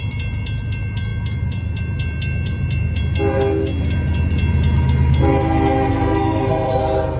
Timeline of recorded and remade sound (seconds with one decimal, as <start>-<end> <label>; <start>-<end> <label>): 0.0-5.9 recorded; 5.9-6.8 remade; 6.8-7.2 recorded